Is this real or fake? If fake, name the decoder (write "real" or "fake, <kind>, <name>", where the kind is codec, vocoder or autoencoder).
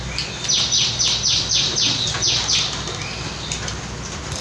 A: real